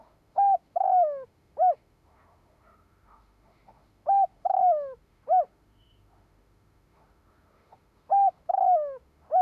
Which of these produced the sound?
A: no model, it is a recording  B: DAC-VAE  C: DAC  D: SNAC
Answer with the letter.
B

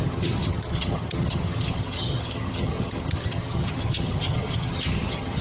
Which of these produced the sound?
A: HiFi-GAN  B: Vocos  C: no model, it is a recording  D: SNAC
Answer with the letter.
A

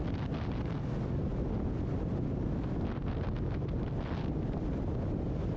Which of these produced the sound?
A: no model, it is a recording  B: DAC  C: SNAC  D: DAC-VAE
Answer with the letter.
A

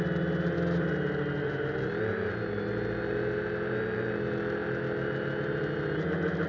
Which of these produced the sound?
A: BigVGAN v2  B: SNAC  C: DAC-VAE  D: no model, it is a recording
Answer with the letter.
D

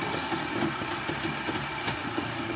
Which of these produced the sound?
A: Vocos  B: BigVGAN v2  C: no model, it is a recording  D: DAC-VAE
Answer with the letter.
C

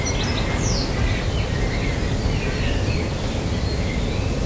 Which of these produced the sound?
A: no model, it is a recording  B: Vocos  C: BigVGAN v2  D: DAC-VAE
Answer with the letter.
A